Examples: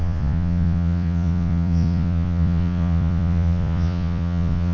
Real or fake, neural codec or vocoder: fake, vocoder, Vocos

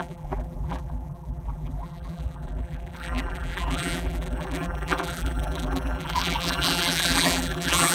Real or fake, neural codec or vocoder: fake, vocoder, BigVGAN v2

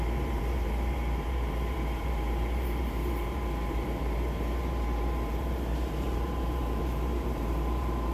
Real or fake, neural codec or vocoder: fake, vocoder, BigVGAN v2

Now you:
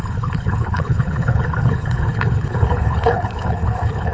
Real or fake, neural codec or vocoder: fake, codec, HILCodec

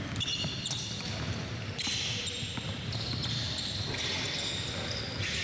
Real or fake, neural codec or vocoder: real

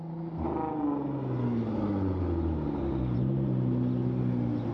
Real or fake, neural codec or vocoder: real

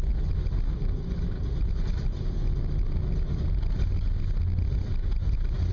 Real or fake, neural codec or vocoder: real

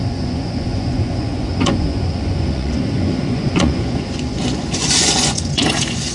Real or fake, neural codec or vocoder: fake, vocoder, Vocos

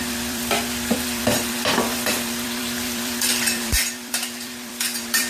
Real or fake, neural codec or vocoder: fake, vocoder, BigVGAN v2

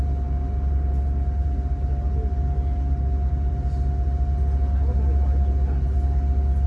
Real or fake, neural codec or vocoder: real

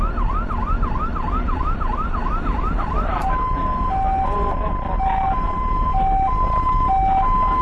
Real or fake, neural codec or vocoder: real